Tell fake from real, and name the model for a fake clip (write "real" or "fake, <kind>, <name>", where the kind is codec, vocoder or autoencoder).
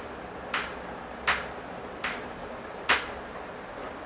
real